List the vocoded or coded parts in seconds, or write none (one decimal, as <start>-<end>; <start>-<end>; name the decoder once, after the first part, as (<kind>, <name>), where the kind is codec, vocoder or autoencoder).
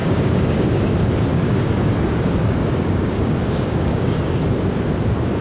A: 0.0-0.8 (codec, DAC); 1.3-4.4